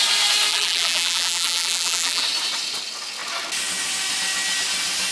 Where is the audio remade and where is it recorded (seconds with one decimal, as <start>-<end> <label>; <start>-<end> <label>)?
0.0-0.5 recorded; 0.5-2.2 remade; 2.2-5.1 recorded